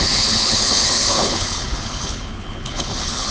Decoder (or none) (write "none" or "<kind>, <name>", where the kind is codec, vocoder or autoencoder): codec, HILCodec